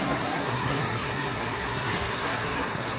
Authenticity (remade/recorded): remade